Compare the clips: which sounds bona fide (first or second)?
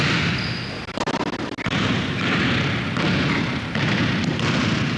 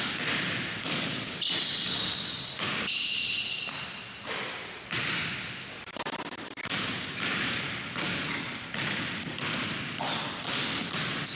first